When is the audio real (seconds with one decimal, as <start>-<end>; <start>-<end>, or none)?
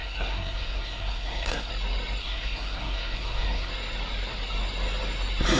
1.7-2.2; 3.7-5.6